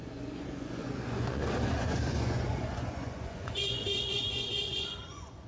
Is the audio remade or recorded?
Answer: remade